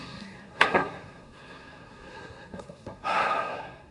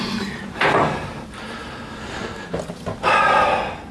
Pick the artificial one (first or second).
first